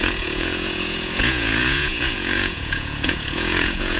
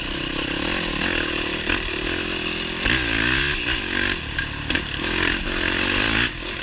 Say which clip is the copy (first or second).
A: first